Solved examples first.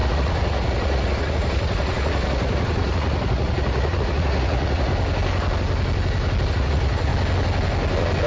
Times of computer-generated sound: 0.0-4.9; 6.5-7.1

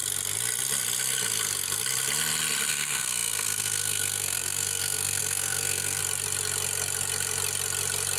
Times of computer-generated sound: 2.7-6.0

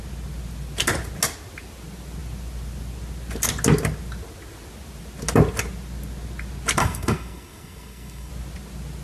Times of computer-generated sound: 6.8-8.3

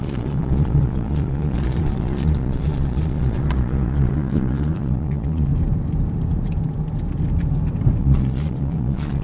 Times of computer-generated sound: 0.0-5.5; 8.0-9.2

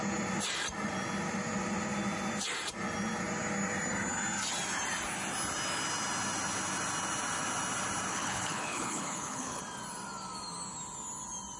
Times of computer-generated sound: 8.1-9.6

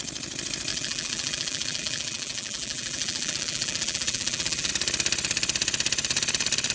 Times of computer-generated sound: 0.7-4.7